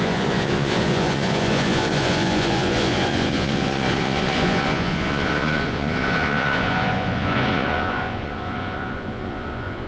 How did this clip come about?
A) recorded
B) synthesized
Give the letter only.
B